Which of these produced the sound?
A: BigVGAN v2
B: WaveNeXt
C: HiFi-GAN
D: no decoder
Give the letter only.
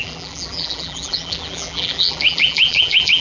A